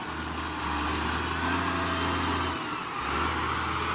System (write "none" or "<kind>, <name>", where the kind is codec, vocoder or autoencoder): none